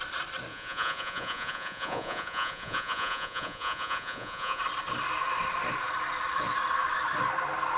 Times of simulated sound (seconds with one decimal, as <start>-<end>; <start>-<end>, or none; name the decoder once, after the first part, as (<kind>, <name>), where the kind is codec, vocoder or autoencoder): 0.5-4.6 (vocoder, Vocos)